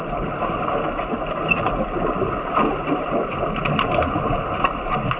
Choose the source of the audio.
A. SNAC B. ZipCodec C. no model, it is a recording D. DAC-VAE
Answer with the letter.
C